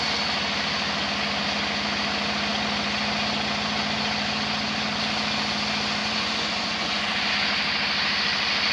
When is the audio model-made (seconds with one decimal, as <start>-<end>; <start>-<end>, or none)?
6.0-7.3